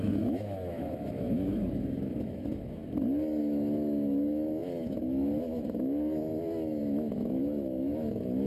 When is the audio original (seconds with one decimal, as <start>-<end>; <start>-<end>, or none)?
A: 2.8-3.4